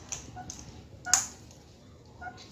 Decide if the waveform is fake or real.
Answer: real